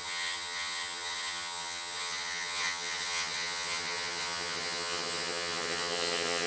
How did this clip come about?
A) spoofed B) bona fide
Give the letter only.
A